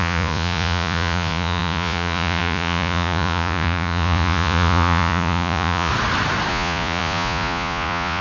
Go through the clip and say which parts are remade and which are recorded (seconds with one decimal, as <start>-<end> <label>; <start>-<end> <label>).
0.0-5.9 remade; 5.9-6.5 recorded; 6.5-8.2 remade